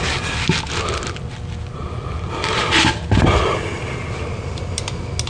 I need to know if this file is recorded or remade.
recorded